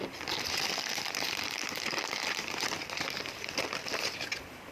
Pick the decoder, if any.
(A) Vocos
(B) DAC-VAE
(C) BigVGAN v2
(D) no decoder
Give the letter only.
C